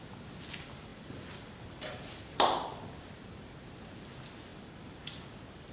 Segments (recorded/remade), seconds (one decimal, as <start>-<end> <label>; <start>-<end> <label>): 0.0-0.9 recorded; 0.9-3.8 remade; 3.8-4.5 recorded; 4.5-5.7 remade